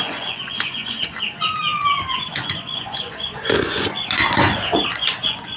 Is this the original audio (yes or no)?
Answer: no